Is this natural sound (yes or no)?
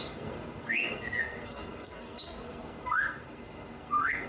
no